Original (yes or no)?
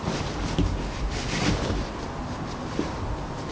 yes